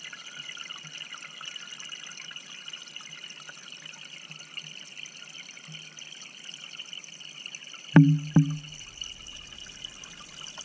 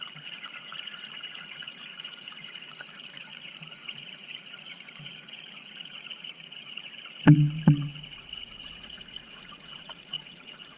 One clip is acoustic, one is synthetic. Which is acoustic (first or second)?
first